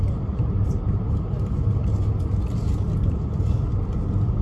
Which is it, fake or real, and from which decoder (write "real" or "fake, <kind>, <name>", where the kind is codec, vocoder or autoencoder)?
real